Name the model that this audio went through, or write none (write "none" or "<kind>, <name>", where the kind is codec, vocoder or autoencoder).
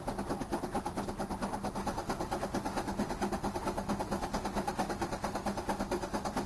none